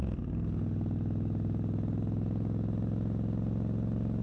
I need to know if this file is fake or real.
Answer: real